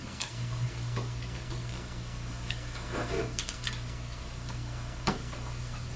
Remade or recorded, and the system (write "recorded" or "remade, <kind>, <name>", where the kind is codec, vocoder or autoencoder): remade, codec, SNAC